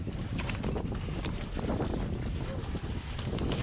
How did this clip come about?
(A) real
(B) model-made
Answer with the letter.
A